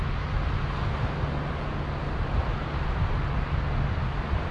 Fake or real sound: real